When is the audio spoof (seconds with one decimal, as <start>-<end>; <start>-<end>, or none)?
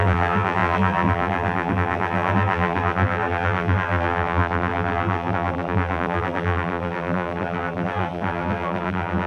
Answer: 0.0-9.3